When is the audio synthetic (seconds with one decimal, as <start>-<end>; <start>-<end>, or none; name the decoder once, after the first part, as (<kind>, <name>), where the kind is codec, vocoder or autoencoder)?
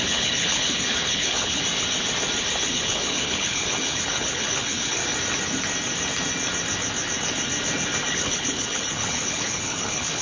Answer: 0.0-1.6 (codec, HILCodec); 2.6-5.0; 8.1-10.2